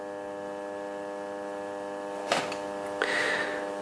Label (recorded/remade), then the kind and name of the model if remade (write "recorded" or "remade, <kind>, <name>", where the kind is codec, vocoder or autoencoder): recorded